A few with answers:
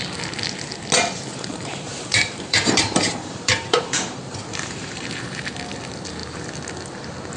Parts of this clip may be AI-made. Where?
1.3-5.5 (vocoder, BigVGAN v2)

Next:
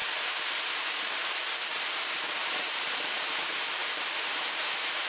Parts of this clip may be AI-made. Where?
0.0-1.1 (vocoder, BigVGAN v2); 2.4-3.4; 3.8-5.1

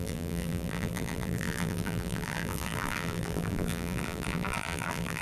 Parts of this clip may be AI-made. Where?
0.0-5.2 (vocoder, BigVGAN v2)